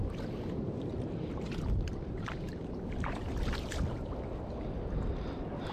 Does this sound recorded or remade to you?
recorded